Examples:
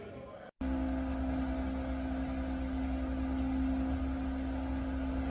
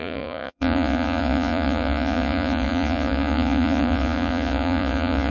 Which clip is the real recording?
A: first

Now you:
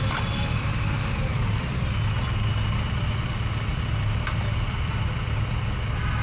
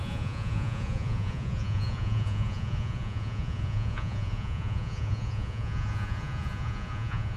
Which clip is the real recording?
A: first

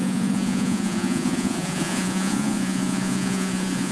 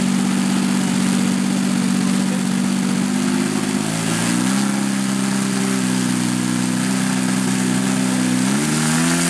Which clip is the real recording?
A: second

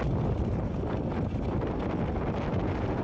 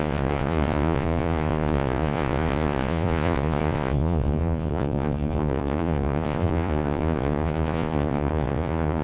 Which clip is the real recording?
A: first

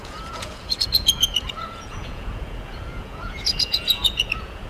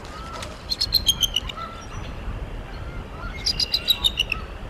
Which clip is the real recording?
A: second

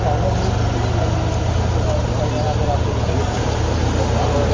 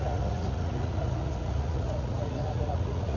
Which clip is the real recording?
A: first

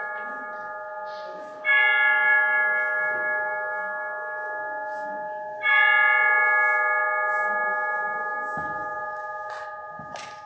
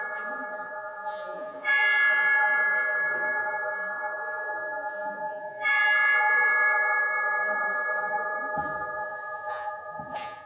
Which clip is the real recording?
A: first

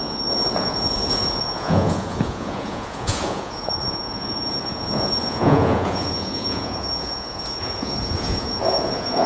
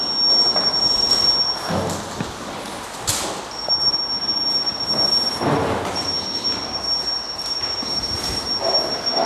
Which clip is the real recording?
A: second